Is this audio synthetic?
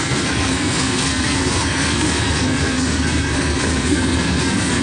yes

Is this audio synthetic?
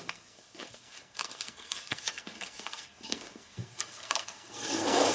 yes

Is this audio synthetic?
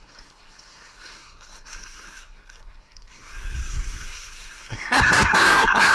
yes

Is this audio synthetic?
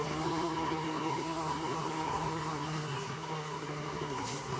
yes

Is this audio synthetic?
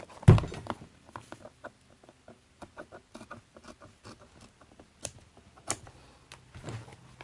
no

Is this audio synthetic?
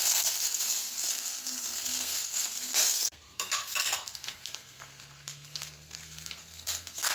yes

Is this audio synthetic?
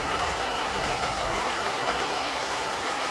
yes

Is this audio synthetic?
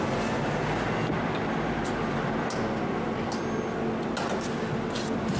no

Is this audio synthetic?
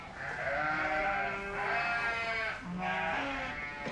no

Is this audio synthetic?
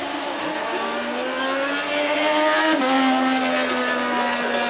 no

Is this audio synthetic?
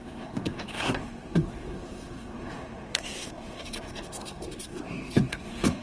yes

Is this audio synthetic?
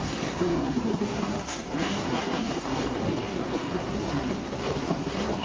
yes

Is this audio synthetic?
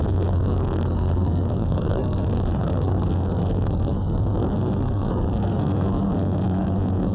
yes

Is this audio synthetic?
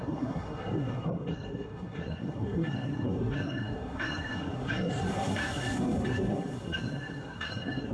yes